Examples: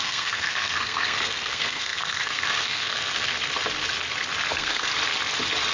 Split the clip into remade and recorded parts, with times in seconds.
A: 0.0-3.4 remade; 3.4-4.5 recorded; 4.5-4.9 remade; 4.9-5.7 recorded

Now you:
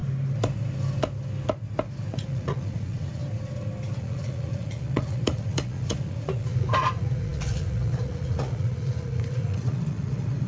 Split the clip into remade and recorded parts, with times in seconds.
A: 0.0-2.1 recorded; 2.1-3.2 remade; 3.2-4.0 recorded; 4.0-10.5 remade

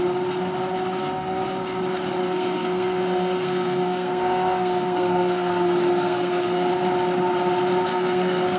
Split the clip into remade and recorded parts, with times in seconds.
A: 0.0-1.0 recorded; 1.0-1.8 remade; 1.8-2.2 recorded; 2.2-6.7 remade; 6.7-7.9 recorded; 7.9-8.6 remade